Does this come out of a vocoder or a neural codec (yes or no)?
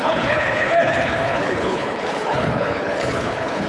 yes